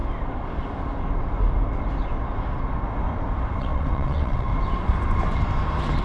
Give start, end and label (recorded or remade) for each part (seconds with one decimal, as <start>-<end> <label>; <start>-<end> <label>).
0.0-3.6 recorded; 3.6-4.5 remade; 4.5-6.0 recorded